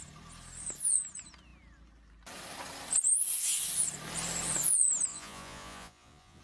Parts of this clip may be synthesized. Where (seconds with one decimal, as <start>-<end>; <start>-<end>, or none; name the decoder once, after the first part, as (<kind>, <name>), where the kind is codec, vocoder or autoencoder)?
5.1-6.4 (vocoder, Vocos)

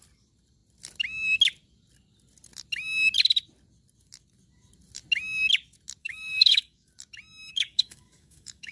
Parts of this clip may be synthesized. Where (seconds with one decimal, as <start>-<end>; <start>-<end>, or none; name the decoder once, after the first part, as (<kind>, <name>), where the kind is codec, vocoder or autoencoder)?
6.0-6.9 (codec, DAC); 7.5-8.7

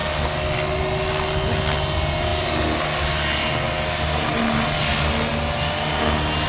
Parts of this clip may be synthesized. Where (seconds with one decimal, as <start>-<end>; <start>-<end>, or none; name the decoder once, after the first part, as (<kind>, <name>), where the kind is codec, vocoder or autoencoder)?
none

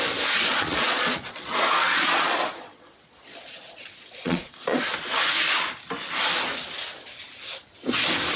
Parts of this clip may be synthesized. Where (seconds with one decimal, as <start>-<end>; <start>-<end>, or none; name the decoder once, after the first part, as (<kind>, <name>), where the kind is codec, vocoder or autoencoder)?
0.5-4.8 (vocoder, Vocos)

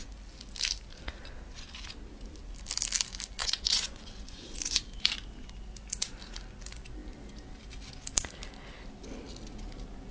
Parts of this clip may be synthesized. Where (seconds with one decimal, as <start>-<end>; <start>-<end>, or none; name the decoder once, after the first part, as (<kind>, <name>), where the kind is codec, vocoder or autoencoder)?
3.4-4.8 (vocoder, Vocos)

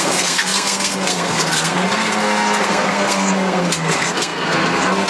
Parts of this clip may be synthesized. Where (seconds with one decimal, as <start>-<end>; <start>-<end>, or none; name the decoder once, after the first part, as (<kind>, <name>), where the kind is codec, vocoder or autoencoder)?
0.0-5.1 (codec, SNAC)

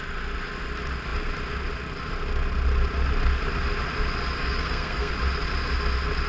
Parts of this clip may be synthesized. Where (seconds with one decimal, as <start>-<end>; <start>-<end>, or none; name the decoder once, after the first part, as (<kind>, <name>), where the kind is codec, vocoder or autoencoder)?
4.4-5.1 (codec, SNAC)

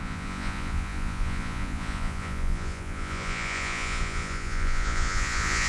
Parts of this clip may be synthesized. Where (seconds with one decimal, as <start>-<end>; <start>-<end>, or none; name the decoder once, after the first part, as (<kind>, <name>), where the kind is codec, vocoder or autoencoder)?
0.0-5.7 (vocoder, Vocos)